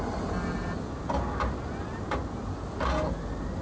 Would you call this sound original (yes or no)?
yes